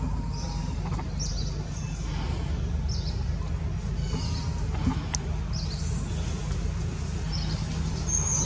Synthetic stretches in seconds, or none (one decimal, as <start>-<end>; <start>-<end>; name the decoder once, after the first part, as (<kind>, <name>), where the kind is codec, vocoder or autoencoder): none

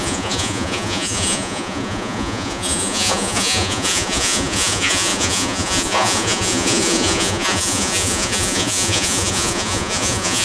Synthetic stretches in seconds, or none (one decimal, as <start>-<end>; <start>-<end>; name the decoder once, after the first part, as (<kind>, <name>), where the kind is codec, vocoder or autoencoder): 0.0-10.4 (vocoder, Vocos)

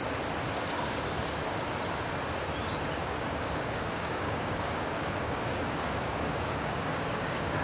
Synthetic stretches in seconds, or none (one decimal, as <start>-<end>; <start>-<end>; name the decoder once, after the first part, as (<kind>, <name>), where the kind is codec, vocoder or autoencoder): 3.0-7.6 (codec, DAC)